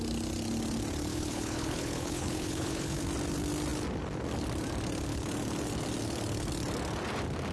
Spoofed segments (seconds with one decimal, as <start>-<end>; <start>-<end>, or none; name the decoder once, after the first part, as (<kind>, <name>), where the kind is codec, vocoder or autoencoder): 1.1-3.0 (codec, HILCodec)